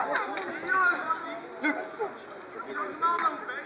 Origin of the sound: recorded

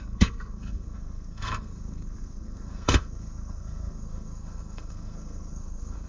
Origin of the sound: remade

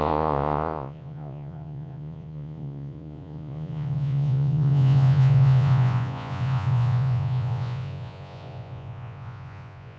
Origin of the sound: remade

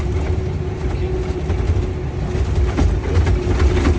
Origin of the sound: recorded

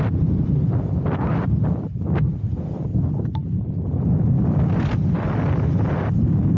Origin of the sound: recorded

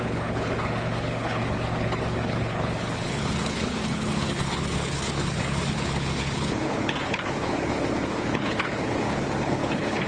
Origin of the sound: remade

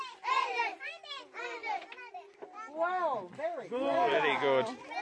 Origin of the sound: recorded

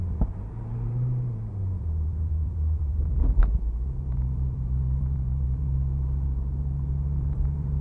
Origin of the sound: remade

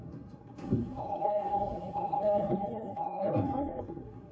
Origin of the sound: remade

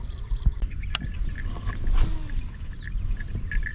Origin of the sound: recorded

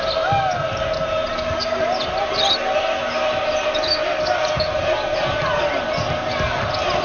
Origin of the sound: recorded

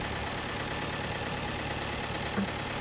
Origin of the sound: recorded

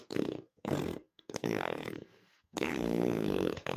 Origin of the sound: remade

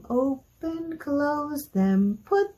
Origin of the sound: recorded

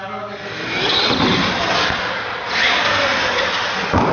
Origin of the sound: recorded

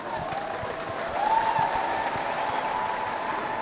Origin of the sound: recorded